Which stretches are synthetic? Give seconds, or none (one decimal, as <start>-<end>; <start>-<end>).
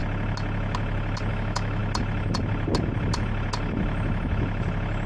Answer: 1.3-1.8